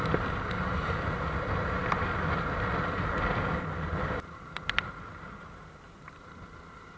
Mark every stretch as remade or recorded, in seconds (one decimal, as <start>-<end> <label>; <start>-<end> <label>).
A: 0.0-7.0 recorded

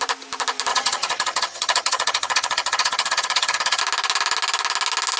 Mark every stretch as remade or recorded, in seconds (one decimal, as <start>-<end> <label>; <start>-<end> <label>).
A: 0.0-0.7 recorded; 0.7-3.8 remade; 3.8-5.2 recorded

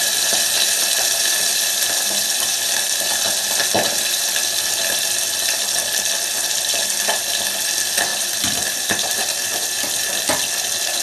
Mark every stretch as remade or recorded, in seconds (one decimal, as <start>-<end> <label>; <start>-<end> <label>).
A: 0.0-8.1 recorded; 8.1-9.8 remade; 9.8-11.0 recorded

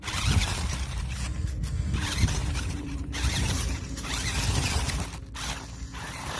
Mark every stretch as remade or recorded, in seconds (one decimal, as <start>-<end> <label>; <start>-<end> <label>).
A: 0.0-2.4 recorded; 2.4-4.1 remade; 4.1-6.4 recorded

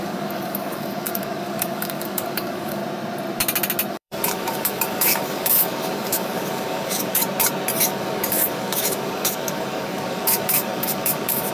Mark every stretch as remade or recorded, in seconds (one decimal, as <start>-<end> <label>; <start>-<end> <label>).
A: 0.0-2.8 remade; 2.8-3.9 recorded; 3.9-7.2 remade; 7.2-7.8 recorded; 7.8-11.5 remade

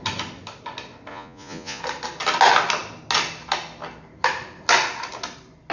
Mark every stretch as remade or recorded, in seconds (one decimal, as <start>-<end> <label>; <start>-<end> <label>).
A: 0.0-1.1 recorded; 1.1-1.8 remade; 1.8-5.7 recorded